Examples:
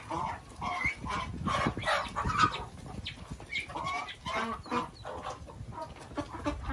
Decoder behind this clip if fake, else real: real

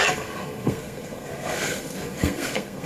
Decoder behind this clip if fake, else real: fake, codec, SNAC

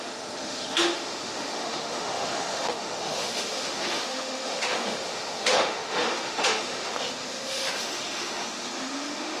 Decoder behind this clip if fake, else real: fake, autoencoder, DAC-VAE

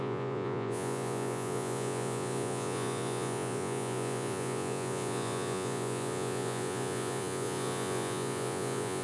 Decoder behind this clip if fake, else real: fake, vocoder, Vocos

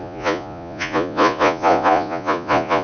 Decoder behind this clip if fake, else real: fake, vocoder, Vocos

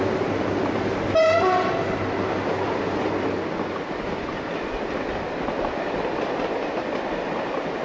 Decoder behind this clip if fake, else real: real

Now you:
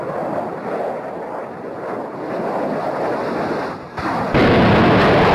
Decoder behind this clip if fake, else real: real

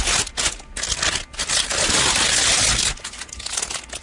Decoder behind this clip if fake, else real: real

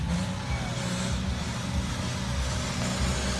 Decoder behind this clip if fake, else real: real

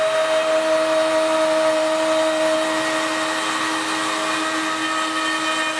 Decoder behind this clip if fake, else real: real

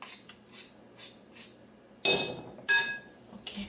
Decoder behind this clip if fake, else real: real